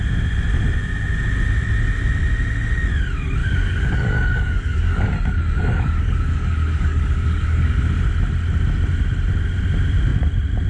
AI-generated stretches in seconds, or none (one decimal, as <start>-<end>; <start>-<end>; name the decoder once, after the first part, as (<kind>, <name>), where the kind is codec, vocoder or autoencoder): 3.4-7.8 (codec, DAC)